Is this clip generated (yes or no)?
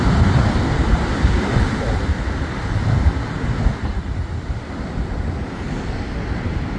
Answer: no